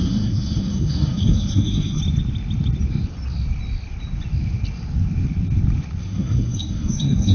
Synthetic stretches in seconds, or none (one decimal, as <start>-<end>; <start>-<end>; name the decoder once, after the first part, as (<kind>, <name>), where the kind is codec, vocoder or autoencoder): 0.0-2.0 (codec, SNAC); 6.0-7.3

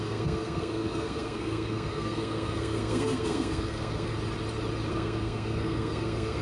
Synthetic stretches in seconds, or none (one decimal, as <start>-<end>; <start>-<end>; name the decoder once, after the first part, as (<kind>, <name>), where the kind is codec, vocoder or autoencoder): 0.0-4.1 (codec, SNAC); 4.9-6.4

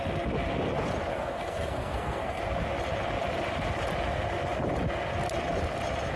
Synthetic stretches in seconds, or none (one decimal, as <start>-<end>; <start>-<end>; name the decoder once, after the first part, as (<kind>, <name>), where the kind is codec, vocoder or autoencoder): 1.1-2.4 (codec, SNAC)

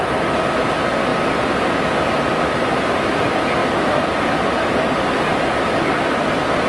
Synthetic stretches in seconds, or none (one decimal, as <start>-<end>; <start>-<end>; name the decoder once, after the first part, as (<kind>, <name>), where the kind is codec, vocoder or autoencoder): none